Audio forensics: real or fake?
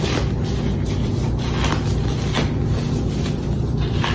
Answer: real